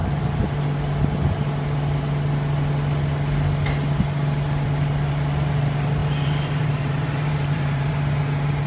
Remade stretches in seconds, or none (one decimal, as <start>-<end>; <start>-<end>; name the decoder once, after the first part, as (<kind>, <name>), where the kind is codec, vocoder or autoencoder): 6.0-7.9 (vocoder, BigVGAN v2)